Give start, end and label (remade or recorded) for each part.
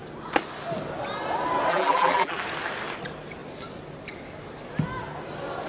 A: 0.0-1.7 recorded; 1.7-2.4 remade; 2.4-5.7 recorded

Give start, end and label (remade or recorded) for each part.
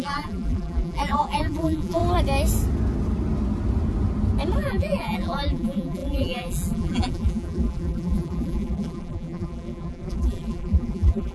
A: 0.0-2.0 remade; 2.0-4.6 recorded; 4.6-11.3 remade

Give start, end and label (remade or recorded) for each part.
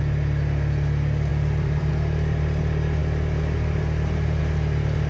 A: 0.0-1.3 recorded; 1.3-1.9 remade; 1.9-5.1 recorded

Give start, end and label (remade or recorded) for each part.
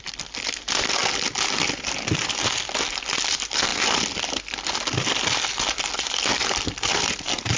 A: 0.0-1.0 remade; 1.0-3.2 recorded; 3.2-7.6 remade